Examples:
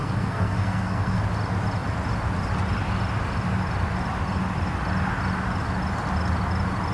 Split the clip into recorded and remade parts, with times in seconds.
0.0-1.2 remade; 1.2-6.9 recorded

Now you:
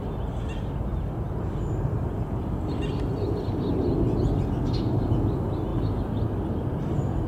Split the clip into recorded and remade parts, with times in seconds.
0.0-7.3 recorded

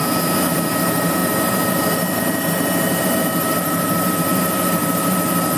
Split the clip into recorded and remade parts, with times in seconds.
0.0-0.5 recorded; 0.5-5.6 remade

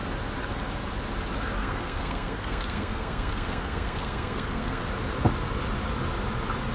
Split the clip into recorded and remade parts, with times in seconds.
0.0-1.6 recorded; 1.6-4.8 remade; 4.8-6.7 recorded

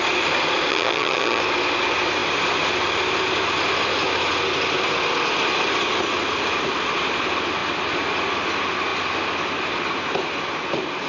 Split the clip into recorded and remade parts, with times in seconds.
0.0-0.7 recorded; 0.7-1.4 remade; 1.4-11.1 recorded

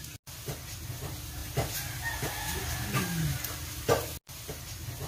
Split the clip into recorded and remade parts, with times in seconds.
0.0-5.1 recorded